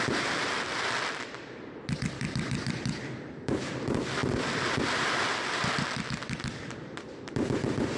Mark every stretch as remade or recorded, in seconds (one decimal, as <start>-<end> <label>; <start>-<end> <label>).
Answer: 0.0-8.0 remade